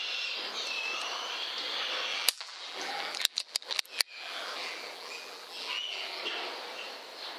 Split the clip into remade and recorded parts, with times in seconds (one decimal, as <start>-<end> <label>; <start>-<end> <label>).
0.0-2.1 recorded; 2.1-6.2 remade; 6.2-7.4 recorded